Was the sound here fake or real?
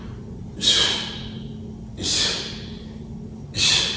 real